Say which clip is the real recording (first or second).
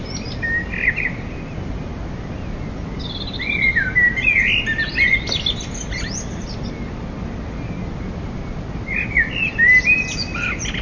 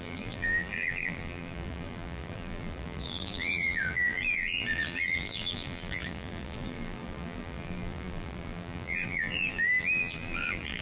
first